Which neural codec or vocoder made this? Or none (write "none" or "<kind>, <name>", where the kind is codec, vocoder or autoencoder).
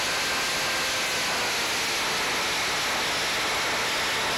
none